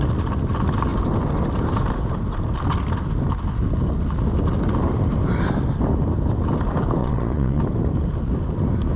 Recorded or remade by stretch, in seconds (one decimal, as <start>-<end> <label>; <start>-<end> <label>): 0.0-7.0 recorded; 7.0-7.6 remade; 7.6-9.0 recorded